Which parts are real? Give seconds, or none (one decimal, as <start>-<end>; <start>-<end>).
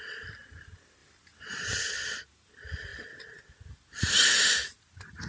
0.0-5.3